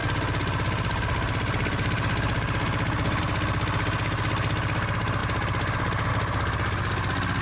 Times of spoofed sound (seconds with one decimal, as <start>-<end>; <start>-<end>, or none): none